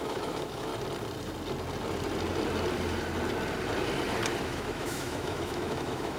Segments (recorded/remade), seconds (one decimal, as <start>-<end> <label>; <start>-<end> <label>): 0.0-0.7 remade; 0.7-4.4 recorded; 4.4-6.2 remade